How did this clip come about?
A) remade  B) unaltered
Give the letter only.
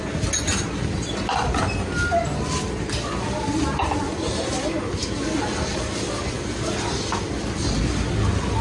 B